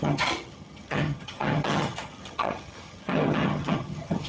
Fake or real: fake